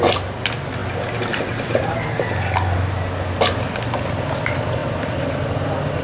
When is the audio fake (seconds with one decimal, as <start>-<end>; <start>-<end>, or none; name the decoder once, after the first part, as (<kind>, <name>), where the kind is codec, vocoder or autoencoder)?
4.8-6.0 (vocoder, BigVGAN v2)